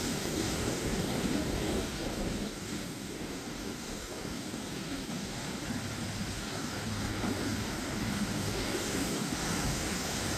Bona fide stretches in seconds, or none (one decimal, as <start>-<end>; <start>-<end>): 5.6-6.3